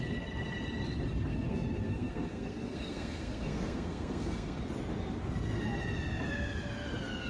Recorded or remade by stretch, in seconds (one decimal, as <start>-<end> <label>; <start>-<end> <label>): 0.0-1.3 recorded; 1.3-4.6 remade; 4.6-7.3 recorded